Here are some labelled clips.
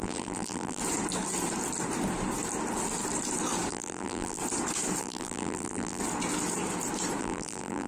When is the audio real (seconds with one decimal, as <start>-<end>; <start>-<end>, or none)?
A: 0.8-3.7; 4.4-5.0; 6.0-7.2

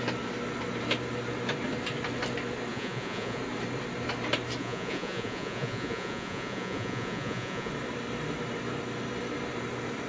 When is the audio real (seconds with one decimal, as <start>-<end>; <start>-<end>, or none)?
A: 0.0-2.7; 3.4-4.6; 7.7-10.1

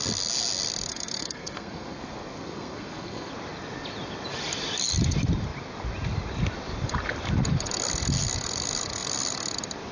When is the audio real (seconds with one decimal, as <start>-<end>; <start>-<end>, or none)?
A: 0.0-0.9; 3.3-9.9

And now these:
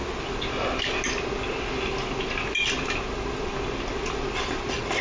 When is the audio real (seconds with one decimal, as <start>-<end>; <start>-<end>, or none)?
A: 0.0-5.0

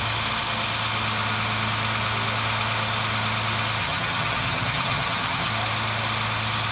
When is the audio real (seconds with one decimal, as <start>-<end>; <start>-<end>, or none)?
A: 0.0-3.8; 5.5-6.7

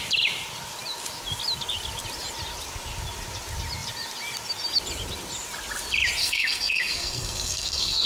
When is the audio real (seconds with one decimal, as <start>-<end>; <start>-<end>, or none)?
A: 0.0-6.2

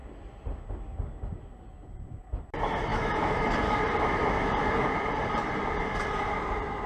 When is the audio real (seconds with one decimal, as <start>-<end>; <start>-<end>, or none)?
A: 0.0-2.9; 3.5-6.9